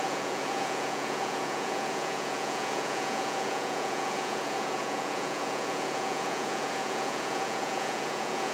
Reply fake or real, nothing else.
fake